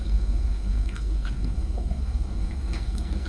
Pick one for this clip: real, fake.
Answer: fake